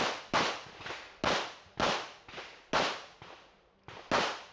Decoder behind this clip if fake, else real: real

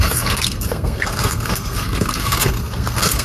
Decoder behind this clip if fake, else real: fake, codec, SNAC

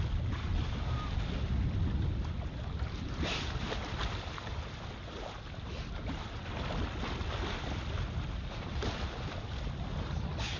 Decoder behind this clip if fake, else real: real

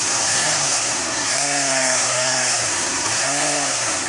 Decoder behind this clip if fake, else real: fake, codec, SNAC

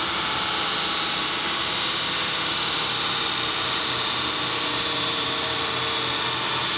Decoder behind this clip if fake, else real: real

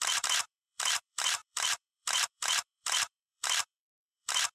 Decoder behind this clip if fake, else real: fake, vocoder, BigVGAN v2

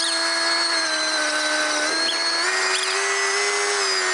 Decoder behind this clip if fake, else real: real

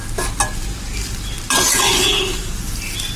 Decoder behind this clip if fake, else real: real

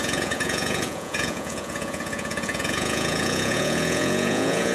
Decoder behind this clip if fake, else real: fake, vocoder, Vocos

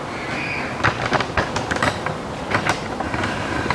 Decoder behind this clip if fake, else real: real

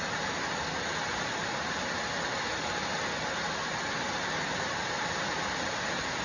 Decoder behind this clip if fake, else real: real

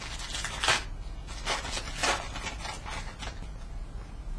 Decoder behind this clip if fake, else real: real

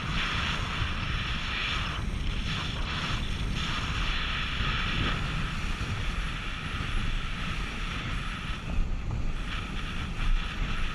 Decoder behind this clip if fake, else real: fake, vocoder, BigVGAN v2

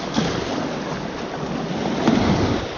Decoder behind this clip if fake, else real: real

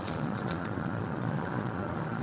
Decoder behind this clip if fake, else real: fake, vocoder, Vocos